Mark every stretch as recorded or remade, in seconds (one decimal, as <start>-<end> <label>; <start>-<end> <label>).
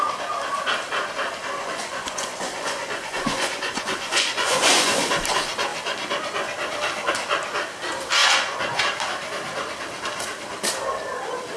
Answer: 0.0-1.6 recorded; 1.6-5.1 remade; 5.1-8.2 recorded; 8.2-8.8 remade; 8.8-11.6 recorded